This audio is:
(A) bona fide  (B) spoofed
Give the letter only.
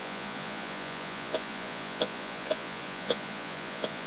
B